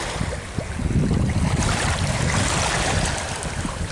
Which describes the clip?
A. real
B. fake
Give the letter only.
A